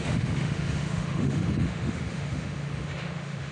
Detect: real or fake fake